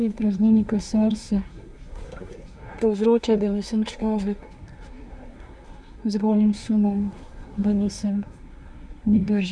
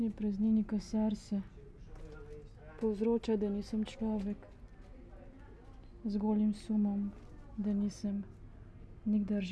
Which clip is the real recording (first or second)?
second